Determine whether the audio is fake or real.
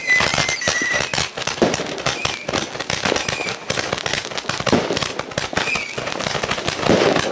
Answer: real